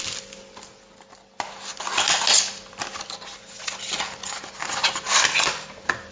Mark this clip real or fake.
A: real